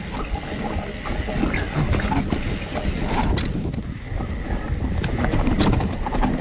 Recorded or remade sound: recorded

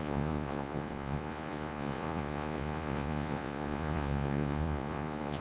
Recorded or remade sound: remade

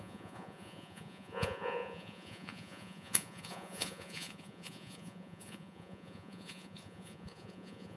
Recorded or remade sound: remade